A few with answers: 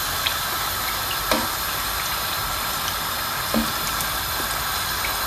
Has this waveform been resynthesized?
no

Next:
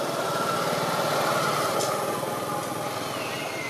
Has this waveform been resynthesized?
no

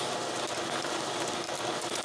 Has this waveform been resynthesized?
no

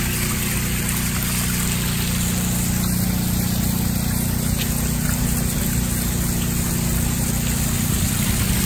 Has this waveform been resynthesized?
no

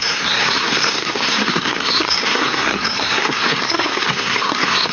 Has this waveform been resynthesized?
yes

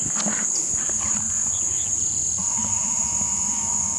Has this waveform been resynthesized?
no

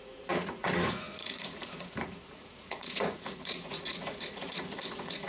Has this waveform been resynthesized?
yes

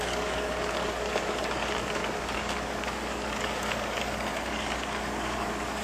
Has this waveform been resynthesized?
yes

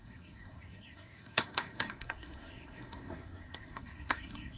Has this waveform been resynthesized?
yes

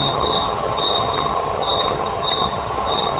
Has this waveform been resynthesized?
yes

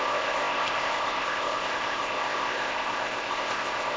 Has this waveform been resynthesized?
yes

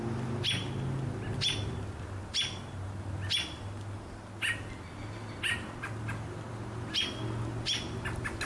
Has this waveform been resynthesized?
no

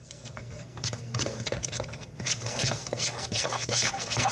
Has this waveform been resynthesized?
yes